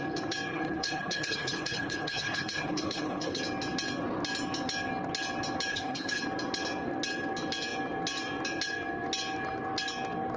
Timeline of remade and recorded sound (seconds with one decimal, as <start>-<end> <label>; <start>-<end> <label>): 0.0-0.5 recorded; 0.5-3.4 remade; 3.4-5.7 recorded; 5.7-6.2 remade; 6.2-10.4 recorded

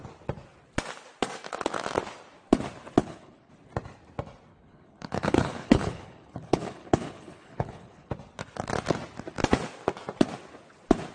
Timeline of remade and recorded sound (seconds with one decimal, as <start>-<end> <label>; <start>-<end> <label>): 0.0-3.0 recorded; 3.0-3.5 remade; 3.5-4.5 recorded; 4.5-8.1 remade; 8.1-11.1 recorded

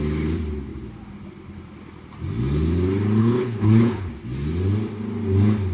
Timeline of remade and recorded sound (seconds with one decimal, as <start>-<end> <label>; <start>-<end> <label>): 0.0-3.2 recorded; 3.2-4.1 remade; 4.1-5.7 recorded

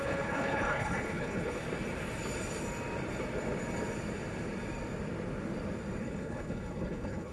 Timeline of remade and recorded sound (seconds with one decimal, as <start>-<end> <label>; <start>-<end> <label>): 0.0-1.6 remade; 1.6-6.0 recorded; 6.0-7.3 remade